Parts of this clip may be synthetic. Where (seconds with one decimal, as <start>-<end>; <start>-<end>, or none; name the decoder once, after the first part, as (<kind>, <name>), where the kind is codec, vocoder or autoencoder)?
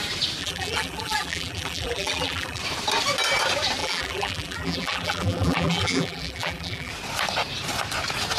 0.4-2.6 (vocoder, BigVGAN v2); 3.8-6.9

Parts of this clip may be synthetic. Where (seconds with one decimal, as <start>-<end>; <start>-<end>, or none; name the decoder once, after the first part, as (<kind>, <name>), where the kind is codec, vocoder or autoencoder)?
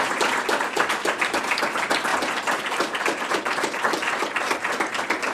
none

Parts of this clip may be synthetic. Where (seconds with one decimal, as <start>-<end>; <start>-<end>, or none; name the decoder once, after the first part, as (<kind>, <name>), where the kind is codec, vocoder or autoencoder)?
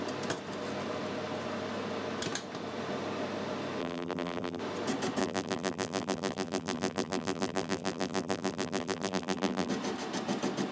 3.8-4.6 (vocoder, BigVGAN v2); 5.2-9.7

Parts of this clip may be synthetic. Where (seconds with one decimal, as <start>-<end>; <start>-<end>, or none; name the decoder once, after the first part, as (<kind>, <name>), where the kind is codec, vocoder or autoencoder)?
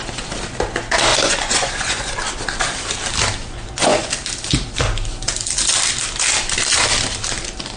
1.1-2.1 (vocoder, Vocos); 3.4-4.1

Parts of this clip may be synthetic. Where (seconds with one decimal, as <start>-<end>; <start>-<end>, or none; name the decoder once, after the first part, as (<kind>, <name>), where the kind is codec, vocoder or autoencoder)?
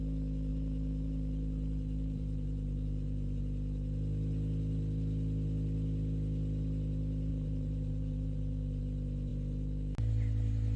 0.5-3.4 (vocoder, BigVGAN v2); 7.3-8.8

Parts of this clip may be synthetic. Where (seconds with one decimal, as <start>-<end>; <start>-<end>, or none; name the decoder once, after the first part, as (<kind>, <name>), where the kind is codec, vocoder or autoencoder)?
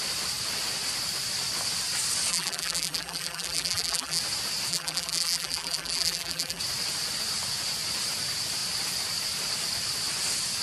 2.3-4.2 (vocoder, BigVGAN v2); 4.7-6.6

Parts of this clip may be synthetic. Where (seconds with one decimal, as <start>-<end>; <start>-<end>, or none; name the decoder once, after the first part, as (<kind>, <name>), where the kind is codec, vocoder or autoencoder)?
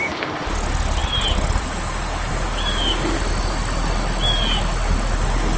none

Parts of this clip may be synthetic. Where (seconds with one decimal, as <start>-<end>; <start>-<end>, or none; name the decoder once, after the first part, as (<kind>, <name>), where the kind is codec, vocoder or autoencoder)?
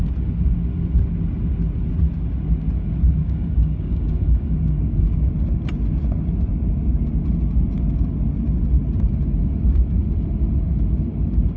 3.2-5.3 (codec, DAC)